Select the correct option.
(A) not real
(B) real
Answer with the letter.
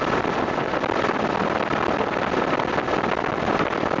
B